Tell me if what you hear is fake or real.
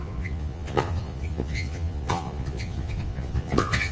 fake